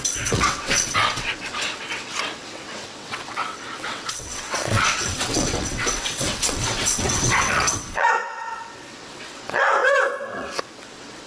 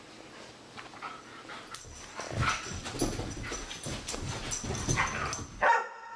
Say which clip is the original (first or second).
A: second